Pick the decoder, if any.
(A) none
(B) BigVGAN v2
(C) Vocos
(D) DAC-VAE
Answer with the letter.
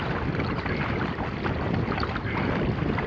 A